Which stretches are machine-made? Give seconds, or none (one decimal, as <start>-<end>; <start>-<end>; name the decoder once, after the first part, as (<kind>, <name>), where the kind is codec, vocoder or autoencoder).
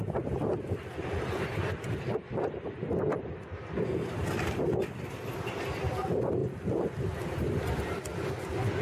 0.0-4.0 (vocoder, BigVGAN v2); 6.4-7.6